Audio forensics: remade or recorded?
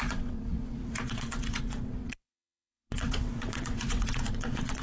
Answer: remade